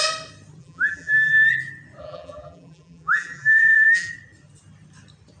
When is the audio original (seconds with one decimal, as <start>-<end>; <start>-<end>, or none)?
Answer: 0.0-0.6; 1.3-2.0; 4.1-5.4